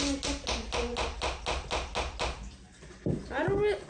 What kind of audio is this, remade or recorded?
recorded